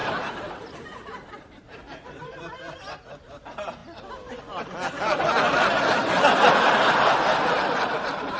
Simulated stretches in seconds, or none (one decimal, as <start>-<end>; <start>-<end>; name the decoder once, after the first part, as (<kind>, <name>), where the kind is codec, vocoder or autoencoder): 0.0-3.8 (vocoder, BigVGAN v2); 7.8-8.4